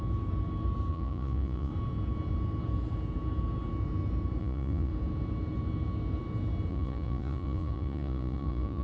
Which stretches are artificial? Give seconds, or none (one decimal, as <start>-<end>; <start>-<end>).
0.9-1.7; 4.4-4.9; 6.7-8.8